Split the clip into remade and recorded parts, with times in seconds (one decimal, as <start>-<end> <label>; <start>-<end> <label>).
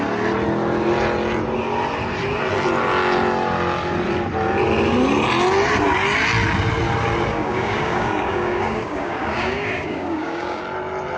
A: 0.0-7.3 recorded; 7.3-10.6 remade; 10.6-11.2 recorded